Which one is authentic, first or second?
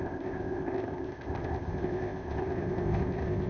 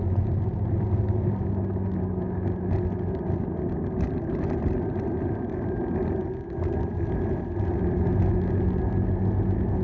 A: second